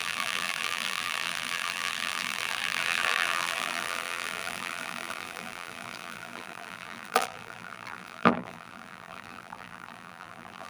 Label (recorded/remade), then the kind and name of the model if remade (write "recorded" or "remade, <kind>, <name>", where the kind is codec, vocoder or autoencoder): remade, vocoder, BigVGAN v2